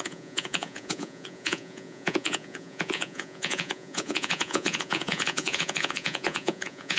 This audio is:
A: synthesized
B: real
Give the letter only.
A